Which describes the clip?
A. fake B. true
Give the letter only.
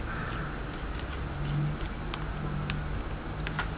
B